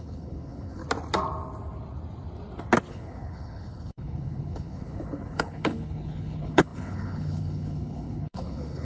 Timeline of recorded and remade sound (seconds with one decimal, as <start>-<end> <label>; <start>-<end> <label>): 0.0-0.8 remade; 0.8-2.9 recorded; 2.9-8.8 remade